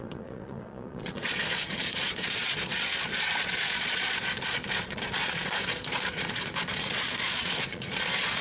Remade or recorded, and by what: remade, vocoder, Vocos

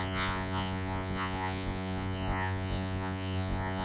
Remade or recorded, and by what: remade, vocoder, Vocos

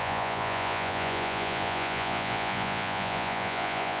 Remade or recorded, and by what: remade, vocoder, Vocos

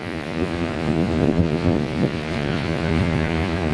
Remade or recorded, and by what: remade, vocoder, Vocos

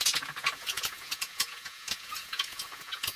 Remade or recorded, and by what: remade, vocoder, Vocos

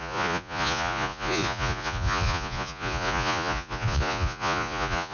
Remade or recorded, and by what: remade, vocoder, Vocos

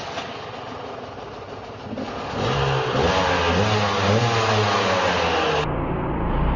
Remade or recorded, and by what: recorded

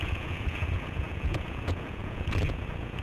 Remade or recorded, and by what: remade, vocoder, Vocos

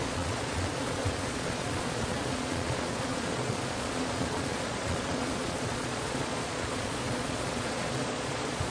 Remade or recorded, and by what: remade, vocoder, Vocos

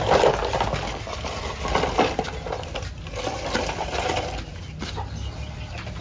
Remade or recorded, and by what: recorded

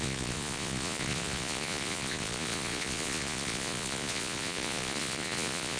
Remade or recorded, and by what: remade, vocoder, Vocos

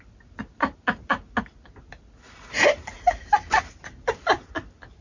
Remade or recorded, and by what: recorded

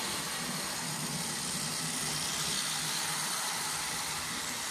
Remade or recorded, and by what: recorded